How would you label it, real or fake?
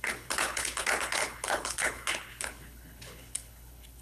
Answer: fake